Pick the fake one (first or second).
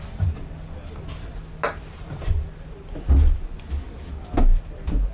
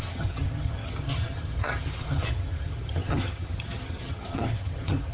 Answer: second